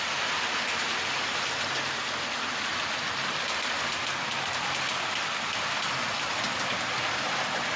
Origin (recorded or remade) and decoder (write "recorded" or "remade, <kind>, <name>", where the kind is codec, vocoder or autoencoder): recorded